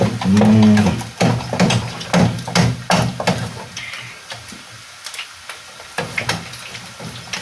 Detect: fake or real real